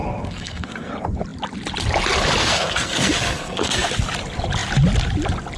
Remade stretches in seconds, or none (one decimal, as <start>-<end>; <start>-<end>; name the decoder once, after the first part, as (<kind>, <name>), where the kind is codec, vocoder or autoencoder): 0.0-0.9 (codec, SNAC); 2.4-3.9